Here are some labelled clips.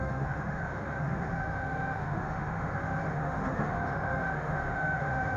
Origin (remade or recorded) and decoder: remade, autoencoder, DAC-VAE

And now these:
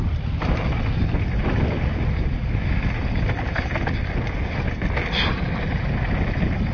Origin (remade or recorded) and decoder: recorded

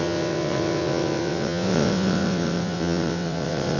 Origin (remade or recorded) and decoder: remade, vocoder, WaveNeXt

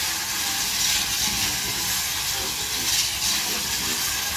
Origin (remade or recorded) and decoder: recorded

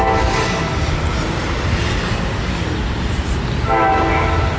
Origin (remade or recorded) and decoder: recorded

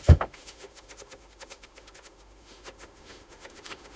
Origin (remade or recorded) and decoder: remade, autoencoder, DAC-VAE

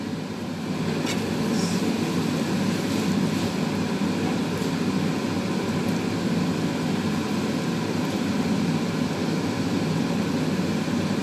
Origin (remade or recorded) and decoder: recorded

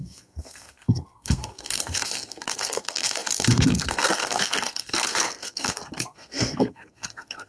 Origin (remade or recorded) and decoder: remade, codec, SNAC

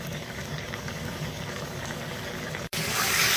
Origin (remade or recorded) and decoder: remade, codec, DAC